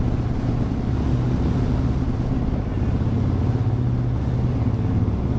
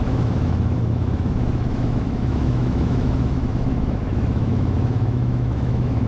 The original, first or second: first